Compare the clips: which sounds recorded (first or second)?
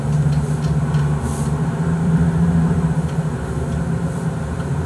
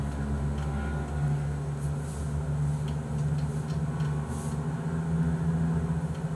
second